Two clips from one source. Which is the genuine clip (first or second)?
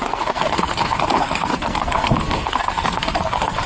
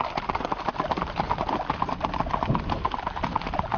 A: second